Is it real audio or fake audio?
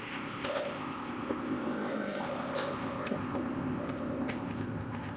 fake